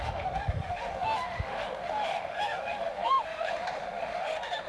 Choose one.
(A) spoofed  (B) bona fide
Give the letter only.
A